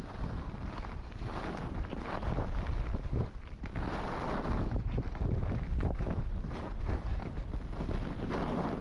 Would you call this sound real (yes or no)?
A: yes